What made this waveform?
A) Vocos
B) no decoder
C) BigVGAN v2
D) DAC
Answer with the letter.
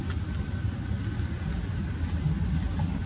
B